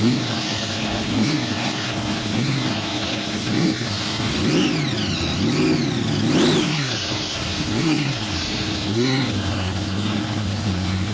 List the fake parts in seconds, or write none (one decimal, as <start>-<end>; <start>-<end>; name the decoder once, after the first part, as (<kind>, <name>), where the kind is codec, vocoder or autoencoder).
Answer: 0.0-4.3 (codec, SNAC); 6.6-11.1